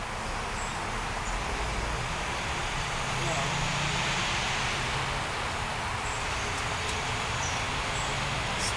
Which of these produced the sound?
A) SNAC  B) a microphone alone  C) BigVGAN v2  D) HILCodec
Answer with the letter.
B